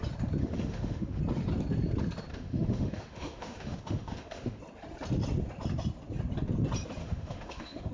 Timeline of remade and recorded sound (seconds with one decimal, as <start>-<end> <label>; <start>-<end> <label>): 0.0-0.4 recorded; 0.4-1.2 remade; 1.2-2.3 recorded; 2.3-4.6 remade; 4.6-7.0 recorded; 7.0-7.9 remade